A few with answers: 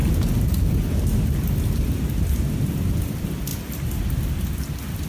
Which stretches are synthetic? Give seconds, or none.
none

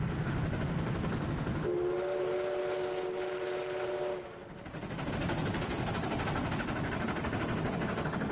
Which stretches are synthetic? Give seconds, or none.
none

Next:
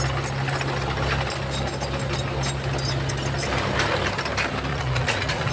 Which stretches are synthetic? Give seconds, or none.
4.7-5.5 (vocoder, Vocos)

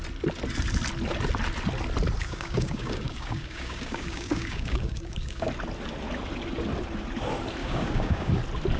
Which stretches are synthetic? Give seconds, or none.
2.2-5.5 (codec, DAC); 7.6-8.3

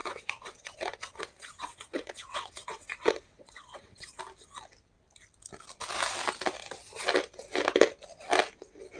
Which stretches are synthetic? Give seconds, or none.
0.0-4.2 (vocoder, WaveNeXt)